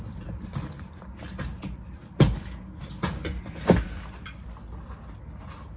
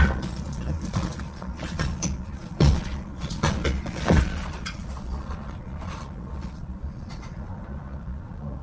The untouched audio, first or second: first